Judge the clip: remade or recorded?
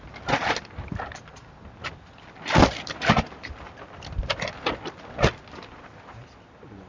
recorded